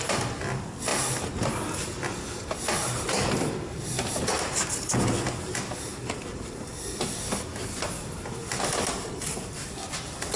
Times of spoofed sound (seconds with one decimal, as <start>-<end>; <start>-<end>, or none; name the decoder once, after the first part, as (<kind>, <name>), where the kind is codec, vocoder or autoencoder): none